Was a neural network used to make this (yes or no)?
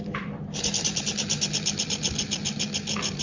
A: no